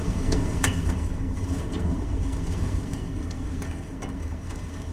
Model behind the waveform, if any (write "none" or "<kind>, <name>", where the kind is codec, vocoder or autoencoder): codec, SNAC